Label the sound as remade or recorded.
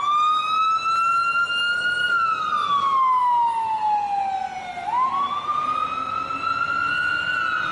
recorded